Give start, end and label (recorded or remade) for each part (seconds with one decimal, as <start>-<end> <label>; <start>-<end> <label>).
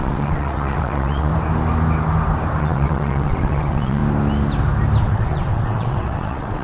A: 0.0-1.3 remade; 1.3-2.6 recorded; 2.6-4.0 remade; 4.0-5.0 recorded; 5.0-6.6 remade